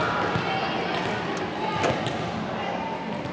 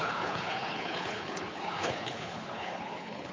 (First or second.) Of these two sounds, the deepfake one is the second